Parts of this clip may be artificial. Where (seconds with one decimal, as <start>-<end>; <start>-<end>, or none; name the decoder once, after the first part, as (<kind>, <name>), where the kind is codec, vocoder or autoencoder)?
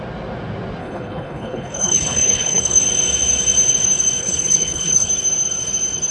0.8-2.8 (codec, HILCodec); 4.2-5.1